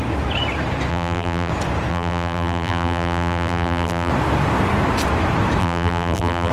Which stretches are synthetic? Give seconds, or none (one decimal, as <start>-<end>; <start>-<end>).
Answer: 0.9-1.5; 1.9-4.1; 5.6-6.5